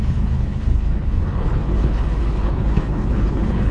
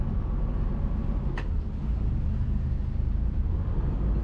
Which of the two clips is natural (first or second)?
second